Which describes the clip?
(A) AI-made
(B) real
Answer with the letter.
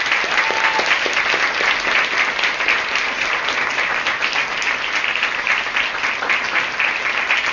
B